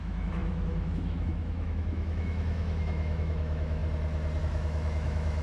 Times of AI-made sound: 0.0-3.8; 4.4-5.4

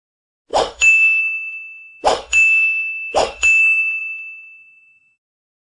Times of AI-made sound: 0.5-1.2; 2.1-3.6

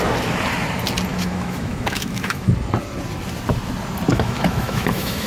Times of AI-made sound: 1.1-2.5; 4.1-5.3

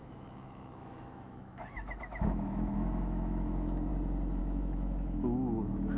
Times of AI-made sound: 0.0-3.9; 4.4-6.0

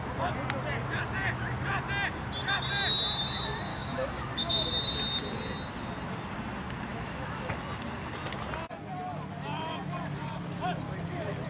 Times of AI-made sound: 3.7-4.7; 6.9-7.5